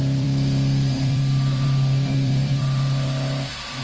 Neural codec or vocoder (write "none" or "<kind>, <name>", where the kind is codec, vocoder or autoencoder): vocoder, BigVGAN v2